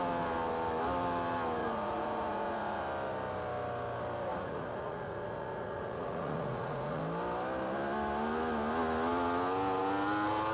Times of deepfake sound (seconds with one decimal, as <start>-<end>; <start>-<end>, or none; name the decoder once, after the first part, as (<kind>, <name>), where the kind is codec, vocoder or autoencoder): 1.6-2.8 (vocoder, Vocos); 4.3-7.0